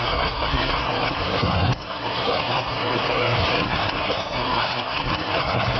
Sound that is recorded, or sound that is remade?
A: remade